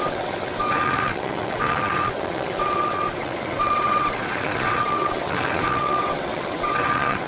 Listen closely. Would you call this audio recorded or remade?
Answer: remade